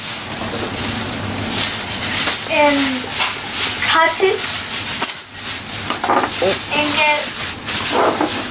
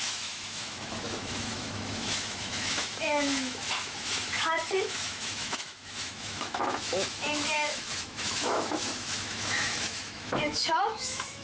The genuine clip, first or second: first